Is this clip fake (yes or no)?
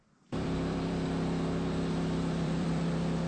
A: yes